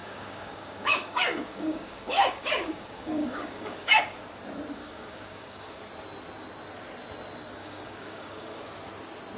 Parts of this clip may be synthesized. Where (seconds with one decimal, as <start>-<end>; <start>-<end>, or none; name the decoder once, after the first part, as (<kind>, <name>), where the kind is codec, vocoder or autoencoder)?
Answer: 0.0-4.2 (codec, DAC); 4.8-5.8; 7.6-8.6